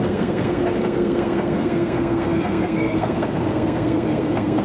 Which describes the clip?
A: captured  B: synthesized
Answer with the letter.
B